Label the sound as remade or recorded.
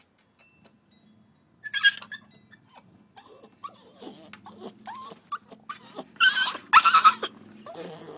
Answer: recorded